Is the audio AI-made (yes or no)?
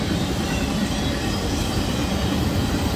yes